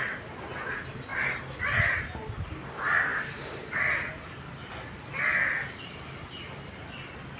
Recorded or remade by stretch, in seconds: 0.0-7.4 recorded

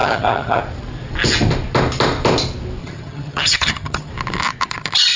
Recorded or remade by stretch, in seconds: 0.0-0.6 remade; 0.6-2.8 recorded; 2.8-4.1 remade; 4.1-5.2 recorded

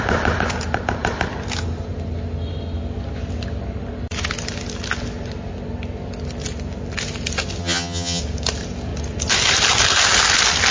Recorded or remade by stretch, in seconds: 0.0-7.6 recorded; 7.6-8.2 remade; 8.2-10.7 recorded

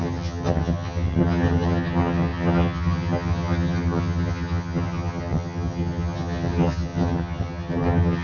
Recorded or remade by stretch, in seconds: 0.0-8.2 remade

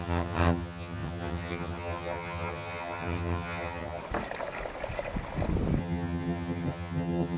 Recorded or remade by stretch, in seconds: 0.0-4.0 remade; 4.0-5.8 recorded; 5.8-7.4 remade

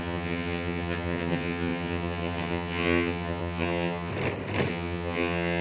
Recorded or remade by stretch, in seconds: 0.0-4.1 remade; 4.1-4.7 recorded; 4.7-5.6 remade

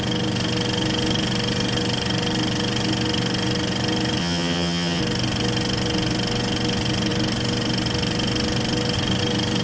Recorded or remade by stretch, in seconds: 0.0-4.2 recorded; 4.2-5.0 remade; 5.0-9.6 recorded

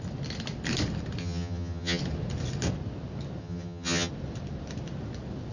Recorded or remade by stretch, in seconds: 0.0-1.2 recorded; 1.2-2.0 remade; 2.0-3.4 recorded; 3.4-4.1 remade; 4.1-5.5 recorded